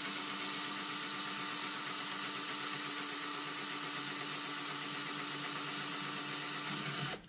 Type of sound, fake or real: real